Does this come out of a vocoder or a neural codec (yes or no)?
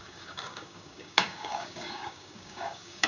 yes